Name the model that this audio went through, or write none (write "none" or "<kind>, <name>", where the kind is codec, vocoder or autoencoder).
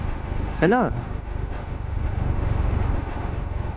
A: autoencoder, DAC-VAE